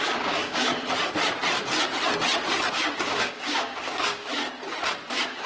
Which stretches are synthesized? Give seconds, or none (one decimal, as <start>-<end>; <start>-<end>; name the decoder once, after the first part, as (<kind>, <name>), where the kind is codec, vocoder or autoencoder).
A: 0.0-0.7 (codec, DAC); 2.7-4.4; 5.1-5.5